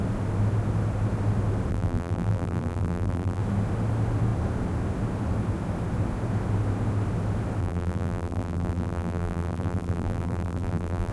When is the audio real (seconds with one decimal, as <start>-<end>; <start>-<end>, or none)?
0.0-1.7; 3.4-7.6